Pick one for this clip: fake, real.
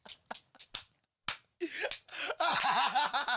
real